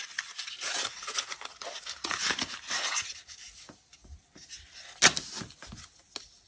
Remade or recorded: recorded